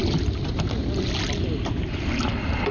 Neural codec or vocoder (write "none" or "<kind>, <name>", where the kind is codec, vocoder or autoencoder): none